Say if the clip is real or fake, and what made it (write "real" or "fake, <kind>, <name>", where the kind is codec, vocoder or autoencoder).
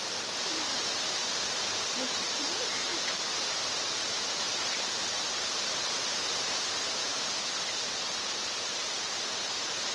fake, vocoder, BigVGAN v2